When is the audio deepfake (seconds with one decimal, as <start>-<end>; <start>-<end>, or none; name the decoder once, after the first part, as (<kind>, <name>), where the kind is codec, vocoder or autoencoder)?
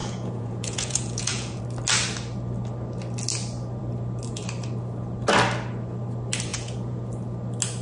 0.0-1.6 (vocoder, Vocos); 6.5-7.1